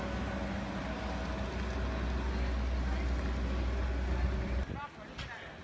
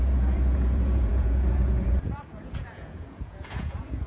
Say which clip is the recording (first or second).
first